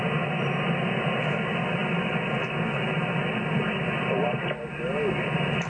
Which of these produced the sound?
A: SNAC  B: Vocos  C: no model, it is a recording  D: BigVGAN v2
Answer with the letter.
C